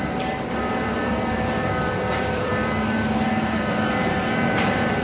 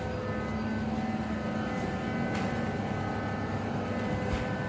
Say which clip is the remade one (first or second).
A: first